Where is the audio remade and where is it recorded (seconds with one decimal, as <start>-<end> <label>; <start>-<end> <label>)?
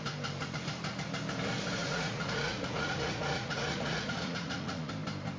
0.0-1.8 recorded; 1.8-4.9 remade; 4.9-5.4 recorded